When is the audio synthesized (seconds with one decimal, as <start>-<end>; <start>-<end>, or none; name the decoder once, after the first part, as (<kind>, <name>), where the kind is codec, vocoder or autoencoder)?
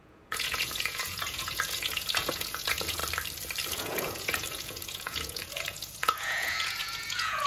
0.0-3.0 (vocoder, Vocos); 3.7-7.5